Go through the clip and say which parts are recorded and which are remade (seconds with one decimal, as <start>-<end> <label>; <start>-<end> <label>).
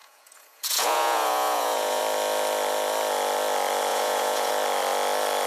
0.0-2.0 remade; 2.0-3.9 recorded; 3.9-4.5 remade; 4.5-5.5 recorded